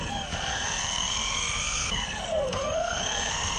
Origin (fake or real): fake